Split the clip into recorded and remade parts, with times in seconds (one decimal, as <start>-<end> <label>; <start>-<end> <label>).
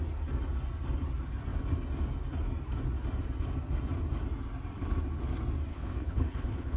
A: 0.0-5.7 recorded; 5.7-6.8 remade